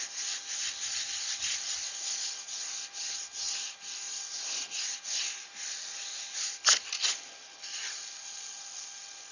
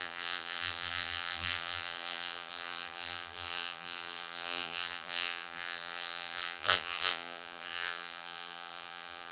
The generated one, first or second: second